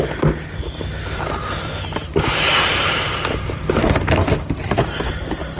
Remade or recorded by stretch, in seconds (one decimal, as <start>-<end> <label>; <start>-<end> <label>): 0.0-5.6 recorded